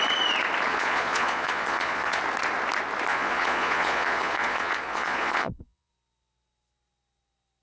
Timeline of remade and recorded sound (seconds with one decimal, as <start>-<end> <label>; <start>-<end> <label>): 0.0-0.7 recorded; 0.7-2.2 remade; 2.2-3.1 recorded; 3.1-5.9 remade; 5.9-7.6 recorded